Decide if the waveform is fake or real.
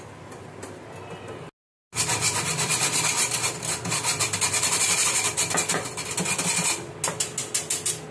real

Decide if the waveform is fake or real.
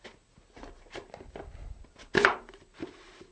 real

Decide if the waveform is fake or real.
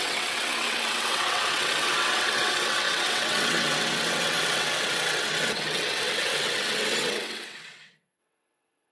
fake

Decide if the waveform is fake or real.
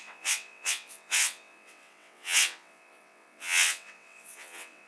fake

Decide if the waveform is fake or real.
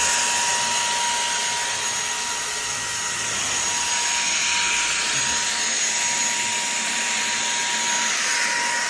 real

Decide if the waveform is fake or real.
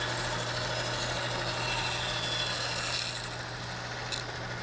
real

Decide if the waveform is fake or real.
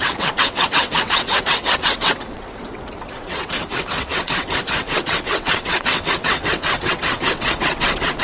fake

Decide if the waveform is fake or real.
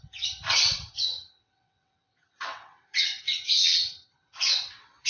fake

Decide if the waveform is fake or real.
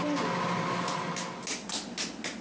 real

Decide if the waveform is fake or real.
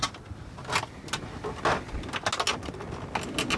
real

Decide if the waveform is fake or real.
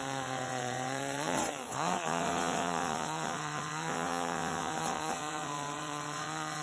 fake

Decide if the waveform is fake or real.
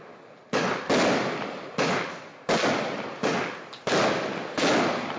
real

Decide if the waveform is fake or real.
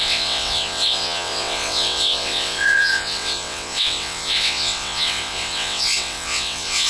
fake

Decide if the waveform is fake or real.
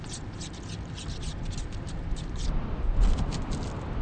real